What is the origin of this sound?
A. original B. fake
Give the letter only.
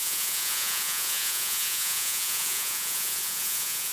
B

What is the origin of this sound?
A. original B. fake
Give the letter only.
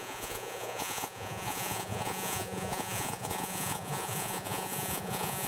B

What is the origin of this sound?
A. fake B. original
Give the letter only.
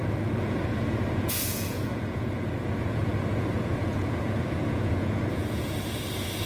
A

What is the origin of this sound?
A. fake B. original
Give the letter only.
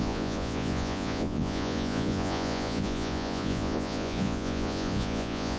A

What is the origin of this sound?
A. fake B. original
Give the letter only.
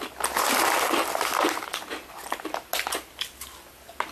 B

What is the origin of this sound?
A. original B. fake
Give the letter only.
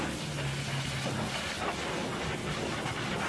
A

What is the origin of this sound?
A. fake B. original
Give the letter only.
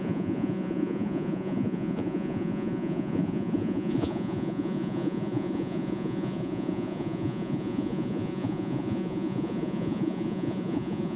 A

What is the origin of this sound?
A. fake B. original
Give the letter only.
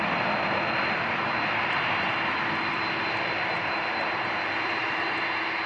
B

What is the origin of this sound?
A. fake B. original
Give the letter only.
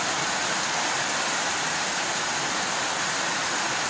B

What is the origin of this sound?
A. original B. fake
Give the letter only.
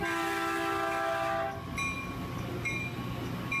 A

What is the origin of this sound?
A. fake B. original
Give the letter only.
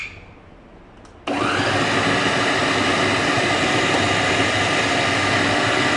B